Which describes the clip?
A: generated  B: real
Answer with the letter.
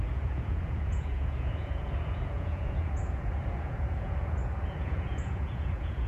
A